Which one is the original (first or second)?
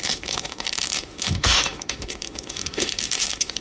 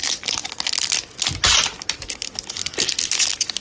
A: second